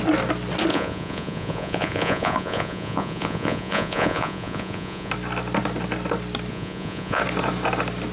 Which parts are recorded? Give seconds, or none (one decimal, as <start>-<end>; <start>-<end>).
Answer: 0.0-0.7; 5.1-6.5; 7.2-8.1